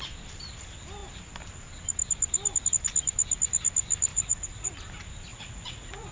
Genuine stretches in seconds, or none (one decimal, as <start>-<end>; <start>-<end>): 0.0-4.1; 4.7-5.3